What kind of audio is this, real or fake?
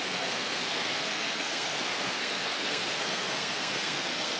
fake